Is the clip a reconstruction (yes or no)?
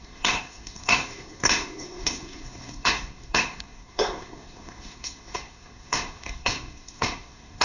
yes